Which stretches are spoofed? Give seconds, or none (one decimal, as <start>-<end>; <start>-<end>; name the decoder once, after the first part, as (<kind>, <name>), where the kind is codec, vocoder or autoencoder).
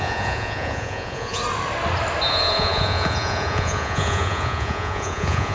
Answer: 0.0-1.4 (vocoder, Vocos); 2.3-5.5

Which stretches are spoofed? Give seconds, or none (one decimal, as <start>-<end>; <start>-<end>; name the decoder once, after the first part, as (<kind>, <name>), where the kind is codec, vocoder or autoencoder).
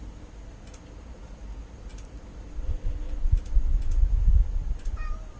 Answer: none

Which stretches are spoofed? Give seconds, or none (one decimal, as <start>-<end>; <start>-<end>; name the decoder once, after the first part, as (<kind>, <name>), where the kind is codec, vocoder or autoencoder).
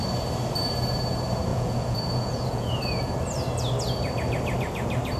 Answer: 1.5-3.1 (vocoder, Vocos)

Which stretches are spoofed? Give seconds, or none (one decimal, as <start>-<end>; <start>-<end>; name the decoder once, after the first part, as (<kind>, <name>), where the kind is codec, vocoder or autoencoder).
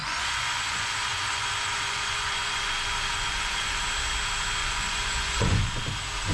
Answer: 0.0-3.8 (vocoder, Vocos); 4.6-5.8